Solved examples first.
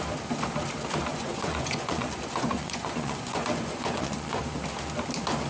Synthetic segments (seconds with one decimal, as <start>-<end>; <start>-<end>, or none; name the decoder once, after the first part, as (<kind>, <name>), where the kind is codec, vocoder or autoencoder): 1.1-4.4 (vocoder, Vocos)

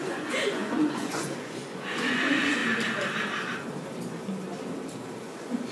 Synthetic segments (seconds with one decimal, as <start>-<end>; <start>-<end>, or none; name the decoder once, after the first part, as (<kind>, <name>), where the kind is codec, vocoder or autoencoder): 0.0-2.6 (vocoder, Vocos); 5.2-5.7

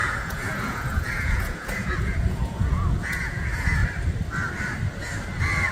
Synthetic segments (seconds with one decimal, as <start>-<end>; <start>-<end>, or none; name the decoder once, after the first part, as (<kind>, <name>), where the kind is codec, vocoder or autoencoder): 0.0-3.8 (vocoder, Vocos)

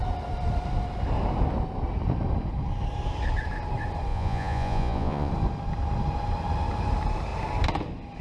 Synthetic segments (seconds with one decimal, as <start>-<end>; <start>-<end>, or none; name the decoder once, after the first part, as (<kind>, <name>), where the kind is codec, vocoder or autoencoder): 4.1-5.3 (vocoder, Vocos)